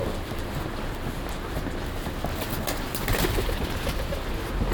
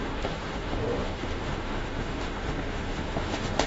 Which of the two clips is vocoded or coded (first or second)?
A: second